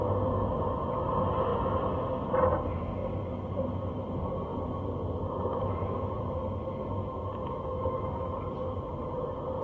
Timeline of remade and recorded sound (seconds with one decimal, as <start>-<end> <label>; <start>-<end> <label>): 0.0-5.5 recorded; 5.5-6.2 remade; 6.2-7.4 recorded; 7.4-8.3 remade; 8.3-9.6 recorded